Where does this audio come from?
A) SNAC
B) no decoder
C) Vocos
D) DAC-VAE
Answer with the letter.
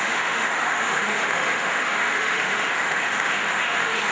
D